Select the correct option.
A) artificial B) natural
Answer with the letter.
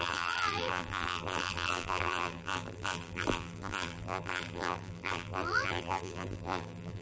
A